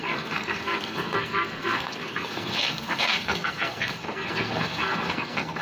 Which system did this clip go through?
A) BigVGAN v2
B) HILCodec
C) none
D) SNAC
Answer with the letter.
D